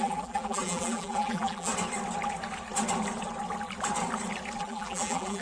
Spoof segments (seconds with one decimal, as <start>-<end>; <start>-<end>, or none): 0.0-1.7; 4.6-5.4